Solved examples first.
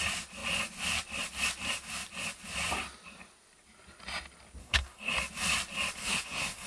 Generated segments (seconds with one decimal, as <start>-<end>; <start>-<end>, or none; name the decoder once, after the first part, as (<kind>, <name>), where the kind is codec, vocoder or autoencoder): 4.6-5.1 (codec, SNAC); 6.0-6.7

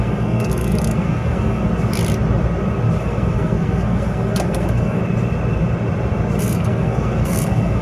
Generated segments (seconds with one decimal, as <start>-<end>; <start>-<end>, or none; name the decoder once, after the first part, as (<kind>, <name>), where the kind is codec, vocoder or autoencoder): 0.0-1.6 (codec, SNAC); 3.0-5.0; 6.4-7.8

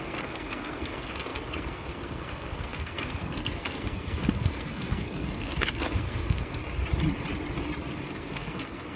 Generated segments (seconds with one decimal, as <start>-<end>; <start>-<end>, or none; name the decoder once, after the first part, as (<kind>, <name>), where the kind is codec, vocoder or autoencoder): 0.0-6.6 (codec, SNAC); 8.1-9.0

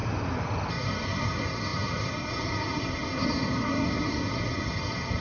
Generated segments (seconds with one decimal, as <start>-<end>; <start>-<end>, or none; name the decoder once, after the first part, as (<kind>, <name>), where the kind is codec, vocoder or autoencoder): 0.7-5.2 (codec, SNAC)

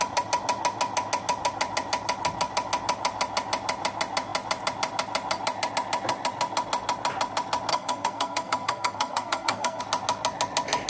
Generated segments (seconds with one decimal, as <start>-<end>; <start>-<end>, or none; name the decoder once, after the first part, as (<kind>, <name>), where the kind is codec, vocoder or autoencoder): 7.7-9.8 (codec, SNAC)

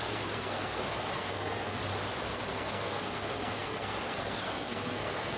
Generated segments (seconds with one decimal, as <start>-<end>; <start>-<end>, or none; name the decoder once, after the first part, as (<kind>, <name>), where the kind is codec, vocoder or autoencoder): 0.0-1.8 (codec, SNAC); 2.3-5.4

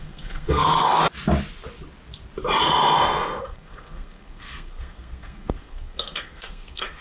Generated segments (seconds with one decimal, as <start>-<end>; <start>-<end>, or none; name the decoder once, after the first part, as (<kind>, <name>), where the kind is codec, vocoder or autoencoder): 0.0-1.0 (codec, SNAC); 3.4-7.0

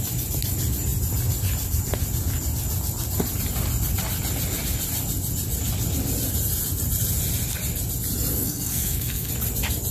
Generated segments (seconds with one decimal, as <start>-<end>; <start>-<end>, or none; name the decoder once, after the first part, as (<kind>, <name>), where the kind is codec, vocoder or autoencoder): 8.3-9.3 (codec, SNAC)